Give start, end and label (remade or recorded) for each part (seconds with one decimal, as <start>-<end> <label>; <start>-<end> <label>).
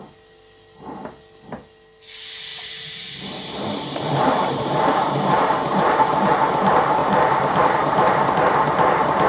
0.0-2.5 recorded; 2.5-6.3 remade; 6.3-7.0 recorded; 7.0-8.3 remade; 8.3-9.3 recorded